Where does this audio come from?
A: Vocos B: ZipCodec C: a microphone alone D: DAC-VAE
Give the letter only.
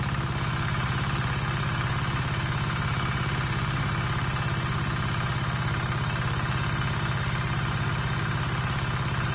C